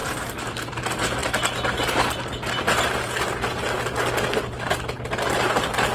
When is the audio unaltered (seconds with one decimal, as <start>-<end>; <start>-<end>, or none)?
0.7-5.9